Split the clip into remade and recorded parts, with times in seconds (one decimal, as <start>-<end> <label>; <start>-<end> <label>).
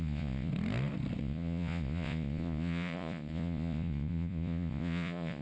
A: 0.0-0.5 remade; 0.5-1.2 recorded; 1.2-5.4 remade